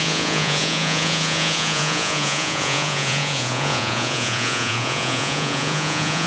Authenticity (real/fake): fake